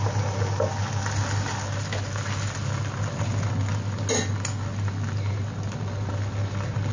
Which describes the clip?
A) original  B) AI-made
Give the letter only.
A